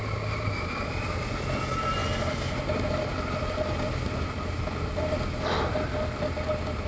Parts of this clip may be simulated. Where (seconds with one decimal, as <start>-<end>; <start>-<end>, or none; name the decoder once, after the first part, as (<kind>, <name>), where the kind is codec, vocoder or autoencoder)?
none